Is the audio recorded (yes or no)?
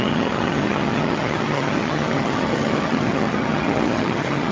no